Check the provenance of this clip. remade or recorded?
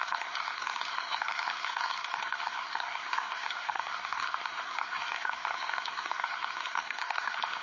remade